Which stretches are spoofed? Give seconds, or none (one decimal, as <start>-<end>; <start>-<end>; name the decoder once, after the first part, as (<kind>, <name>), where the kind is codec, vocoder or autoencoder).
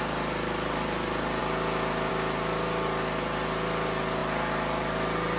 none